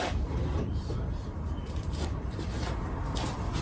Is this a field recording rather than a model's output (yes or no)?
no